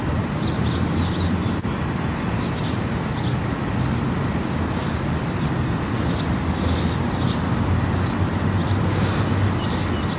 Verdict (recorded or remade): recorded